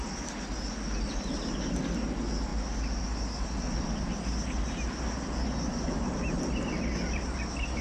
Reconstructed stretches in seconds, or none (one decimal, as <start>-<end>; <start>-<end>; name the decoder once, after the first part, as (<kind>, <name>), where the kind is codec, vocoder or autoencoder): none